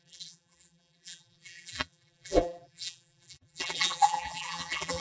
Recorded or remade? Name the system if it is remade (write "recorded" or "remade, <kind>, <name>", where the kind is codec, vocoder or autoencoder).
remade, vocoder, BigVGAN v2